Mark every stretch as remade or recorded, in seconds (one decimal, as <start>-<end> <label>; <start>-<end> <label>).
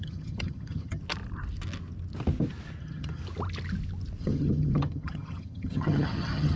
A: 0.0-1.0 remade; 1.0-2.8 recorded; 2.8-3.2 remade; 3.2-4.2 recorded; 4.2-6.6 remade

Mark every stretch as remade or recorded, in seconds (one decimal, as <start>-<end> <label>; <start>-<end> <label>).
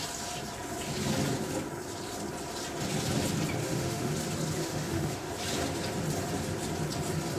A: 0.0-3.6 recorded; 3.6-4.1 remade; 4.1-4.6 recorded; 4.6-5.3 remade; 5.3-7.4 recorded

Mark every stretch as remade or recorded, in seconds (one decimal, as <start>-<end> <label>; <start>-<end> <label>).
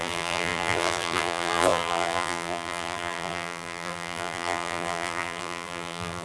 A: 0.0-6.2 remade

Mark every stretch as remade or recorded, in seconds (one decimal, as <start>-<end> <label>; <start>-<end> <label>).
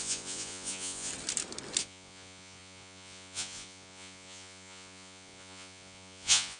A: 0.0-1.1 remade; 1.1-1.8 recorded; 1.8-6.6 remade